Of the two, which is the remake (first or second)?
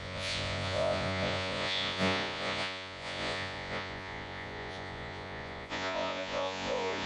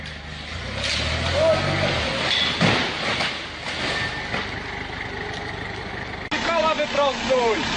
first